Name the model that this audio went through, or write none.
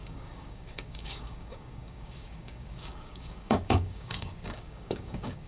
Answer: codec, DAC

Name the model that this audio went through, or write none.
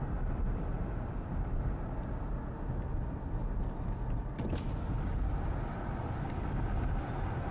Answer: none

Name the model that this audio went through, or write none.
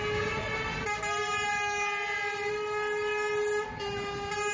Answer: none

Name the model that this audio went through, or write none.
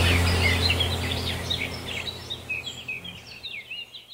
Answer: none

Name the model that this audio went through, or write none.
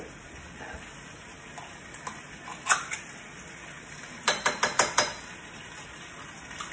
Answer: none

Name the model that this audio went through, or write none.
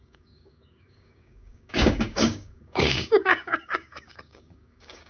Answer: codec, DAC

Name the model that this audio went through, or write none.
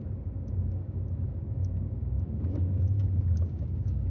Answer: codec, DAC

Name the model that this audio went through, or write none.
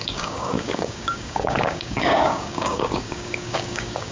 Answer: codec, DAC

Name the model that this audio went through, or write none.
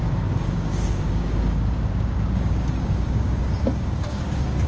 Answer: codec, DAC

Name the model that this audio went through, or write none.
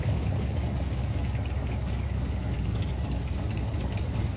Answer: codec, DAC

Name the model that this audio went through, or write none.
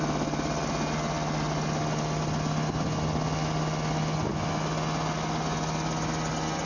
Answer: none